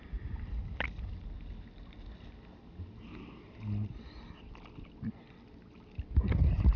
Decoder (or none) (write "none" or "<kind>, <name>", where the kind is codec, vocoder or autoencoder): none